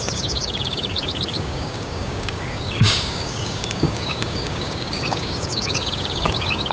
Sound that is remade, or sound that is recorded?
remade